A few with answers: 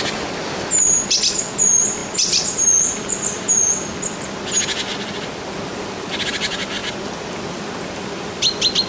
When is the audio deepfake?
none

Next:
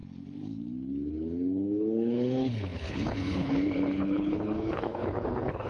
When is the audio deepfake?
0.0-5.7 (codec, HILCodec)

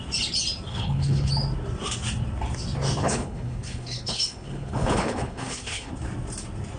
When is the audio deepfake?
0.7-1.3 (codec, HILCodec); 3.0-5.9

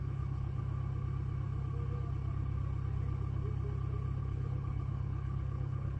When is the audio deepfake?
0.0-0.6 (codec, HILCodec); 4.2-6.0